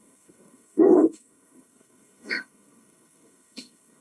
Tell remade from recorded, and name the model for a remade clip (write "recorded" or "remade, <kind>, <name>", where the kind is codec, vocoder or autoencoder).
remade, codec, SNAC